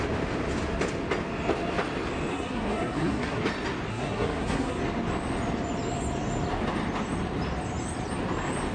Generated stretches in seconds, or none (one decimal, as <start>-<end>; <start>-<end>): 2.3-3.4; 3.9-4.8